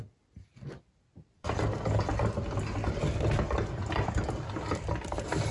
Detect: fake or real real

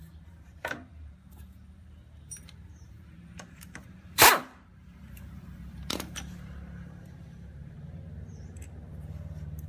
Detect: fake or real fake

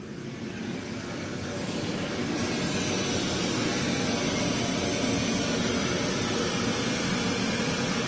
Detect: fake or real real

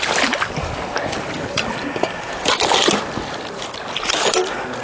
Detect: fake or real real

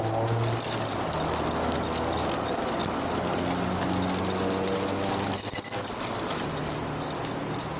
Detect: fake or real fake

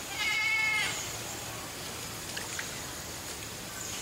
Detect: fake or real real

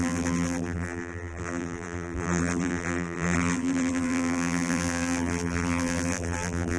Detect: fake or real fake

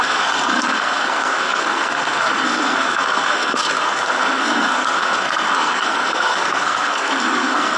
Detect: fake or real fake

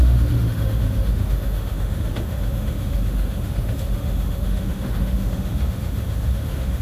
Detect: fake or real fake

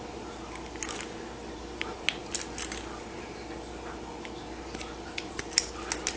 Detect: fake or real real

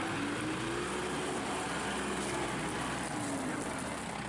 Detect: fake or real real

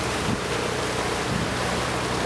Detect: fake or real real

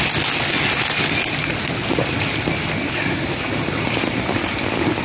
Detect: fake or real real